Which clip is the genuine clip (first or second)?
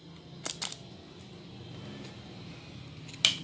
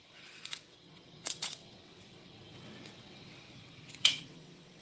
first